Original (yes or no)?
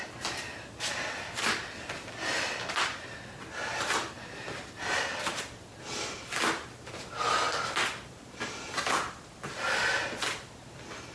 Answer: yes